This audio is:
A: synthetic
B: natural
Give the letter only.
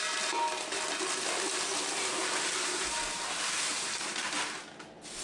B